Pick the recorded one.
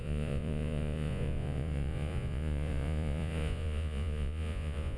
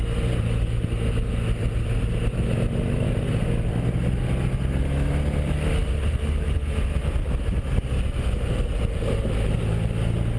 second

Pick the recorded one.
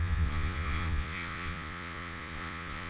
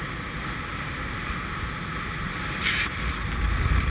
second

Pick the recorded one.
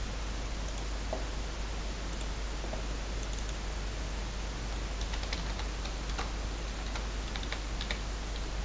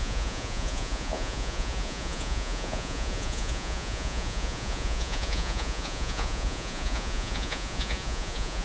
first